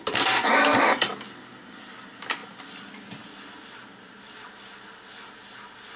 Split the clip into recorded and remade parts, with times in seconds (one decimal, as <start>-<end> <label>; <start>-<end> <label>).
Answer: 0.0-6.0 recorded